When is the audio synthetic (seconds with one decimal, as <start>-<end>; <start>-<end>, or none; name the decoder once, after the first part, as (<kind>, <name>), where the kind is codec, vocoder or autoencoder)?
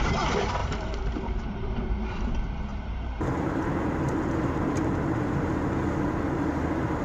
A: 0.6-1.8 (vocoder, BigVGAN v2); 2.7-5.6